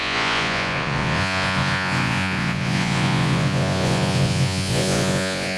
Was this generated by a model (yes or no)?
yes